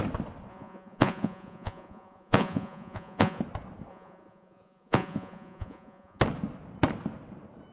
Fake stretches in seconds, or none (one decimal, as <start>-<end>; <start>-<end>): 0.5-3.4; 3.9-6.2

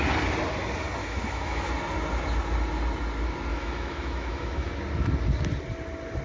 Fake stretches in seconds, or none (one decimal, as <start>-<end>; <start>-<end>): 1.0-1.7; 3.5-4.7

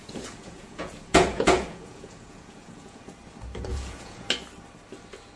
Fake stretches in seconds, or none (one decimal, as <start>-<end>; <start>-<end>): 0.0-3.1; 3.7-4.3